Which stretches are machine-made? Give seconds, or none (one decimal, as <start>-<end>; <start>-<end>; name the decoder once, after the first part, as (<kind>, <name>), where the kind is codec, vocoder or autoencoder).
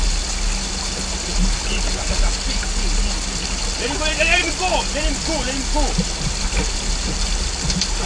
none